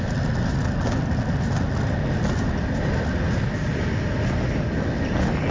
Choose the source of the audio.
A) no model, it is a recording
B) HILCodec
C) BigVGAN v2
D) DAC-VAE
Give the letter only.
A